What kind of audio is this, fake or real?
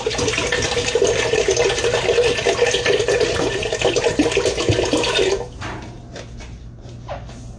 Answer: real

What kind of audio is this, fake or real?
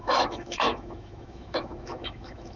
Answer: fake